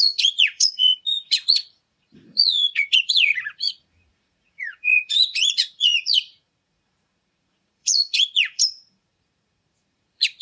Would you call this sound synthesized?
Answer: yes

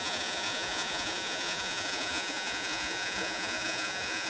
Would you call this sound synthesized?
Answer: yes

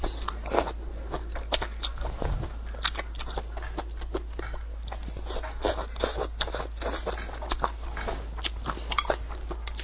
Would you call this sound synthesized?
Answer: no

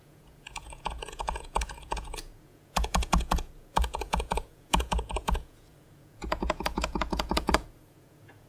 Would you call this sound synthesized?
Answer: yes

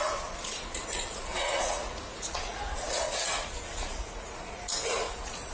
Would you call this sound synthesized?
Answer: yes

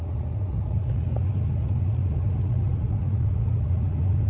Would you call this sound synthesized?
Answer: yes